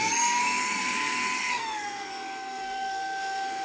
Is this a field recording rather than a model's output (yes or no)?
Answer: no